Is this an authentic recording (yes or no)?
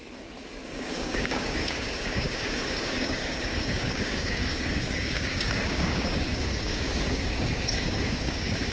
no